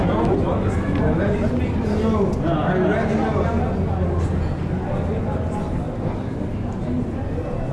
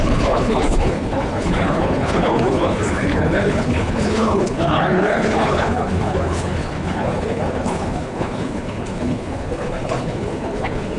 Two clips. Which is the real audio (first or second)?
first